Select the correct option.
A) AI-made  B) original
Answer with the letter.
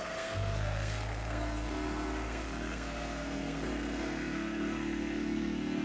A